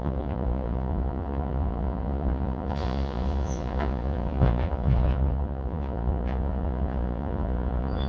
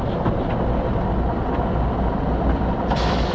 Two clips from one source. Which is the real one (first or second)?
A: second